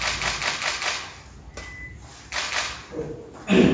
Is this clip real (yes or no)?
yes